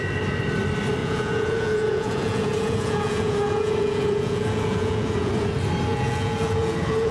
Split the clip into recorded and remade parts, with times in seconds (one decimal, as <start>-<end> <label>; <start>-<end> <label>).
0.0-1.0 recorded; 1.0-5.3 remade; 5.3-5.9 recorded; 5.9-7.1 remade